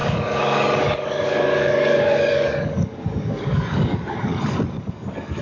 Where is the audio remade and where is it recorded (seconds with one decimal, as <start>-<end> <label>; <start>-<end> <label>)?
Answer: 0.0-4.3 remade; 4.3-4.8 recorded; 4.8-5.4 remade